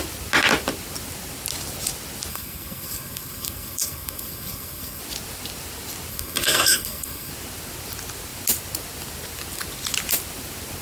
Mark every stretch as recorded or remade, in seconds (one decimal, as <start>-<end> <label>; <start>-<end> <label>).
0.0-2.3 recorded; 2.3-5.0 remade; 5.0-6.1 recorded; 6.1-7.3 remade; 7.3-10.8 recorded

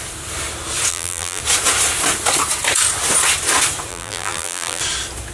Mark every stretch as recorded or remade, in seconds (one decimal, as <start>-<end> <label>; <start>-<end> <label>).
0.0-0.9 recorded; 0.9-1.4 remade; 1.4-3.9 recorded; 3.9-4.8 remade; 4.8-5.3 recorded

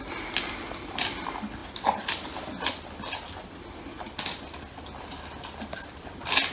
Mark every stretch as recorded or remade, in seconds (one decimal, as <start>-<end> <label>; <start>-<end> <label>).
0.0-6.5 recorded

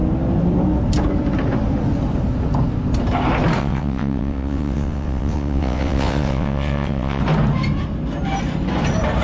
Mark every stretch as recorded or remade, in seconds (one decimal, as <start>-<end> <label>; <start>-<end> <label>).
0.0-3.6 recorded; 3.6-7.2 remade; 7.2-9.2 recorded

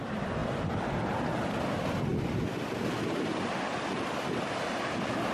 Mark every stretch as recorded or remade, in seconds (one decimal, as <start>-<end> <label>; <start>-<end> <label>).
0.0-5.3 recorded

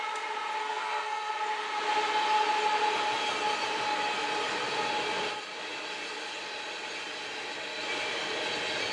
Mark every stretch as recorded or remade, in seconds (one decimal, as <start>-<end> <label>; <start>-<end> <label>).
0.0-0.6 recorded; 0.6-1.4 remade; 1.4-8.9 recorded